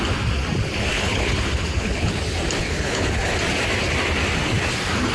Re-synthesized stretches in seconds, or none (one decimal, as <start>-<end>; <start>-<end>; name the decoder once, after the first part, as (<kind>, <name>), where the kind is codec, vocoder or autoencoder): 0.9-2.2 (codec, HILCodec); 2.6-3.3

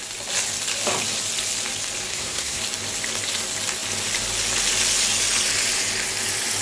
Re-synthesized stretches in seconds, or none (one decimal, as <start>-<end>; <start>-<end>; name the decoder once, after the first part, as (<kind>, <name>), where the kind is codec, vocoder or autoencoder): 2.1-2.6 (codec, SNAC)

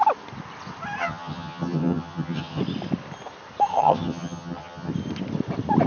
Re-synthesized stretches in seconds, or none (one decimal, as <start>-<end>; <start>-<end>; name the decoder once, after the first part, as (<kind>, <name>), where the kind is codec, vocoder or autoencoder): 1.0-2.6 (vocoder, HiFi-GAN); 3.7-4.9

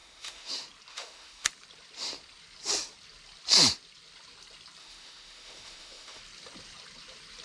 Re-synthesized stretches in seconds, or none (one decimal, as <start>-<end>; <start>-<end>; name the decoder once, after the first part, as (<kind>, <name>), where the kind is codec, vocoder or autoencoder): 0.0-0.5 (autoencoder, DAC-VAE); 0.9-1.5; 4.8-6.2

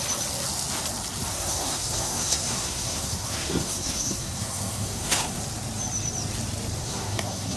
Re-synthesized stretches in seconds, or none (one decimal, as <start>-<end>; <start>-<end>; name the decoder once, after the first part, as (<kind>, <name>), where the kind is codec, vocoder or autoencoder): 1.3-5.4 (codec, SNAC); 6.8-7.6